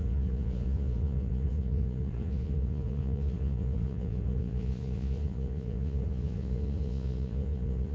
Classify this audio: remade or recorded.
remade